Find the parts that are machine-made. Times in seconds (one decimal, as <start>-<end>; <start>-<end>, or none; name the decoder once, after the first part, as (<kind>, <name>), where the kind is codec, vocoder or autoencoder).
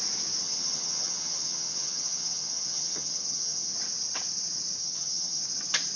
0.4-3.7 (vocoder, HiFi-GAN); 4.8-5.4